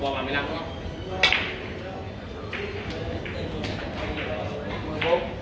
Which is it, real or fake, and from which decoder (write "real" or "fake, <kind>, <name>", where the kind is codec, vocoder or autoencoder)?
real